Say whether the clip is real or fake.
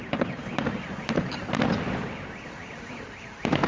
real